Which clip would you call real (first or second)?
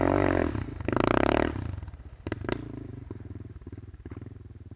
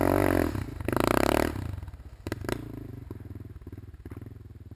second